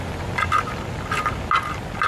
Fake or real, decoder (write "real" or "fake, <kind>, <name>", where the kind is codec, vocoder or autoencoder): real